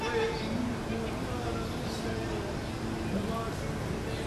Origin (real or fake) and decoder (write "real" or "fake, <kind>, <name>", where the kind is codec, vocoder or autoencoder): real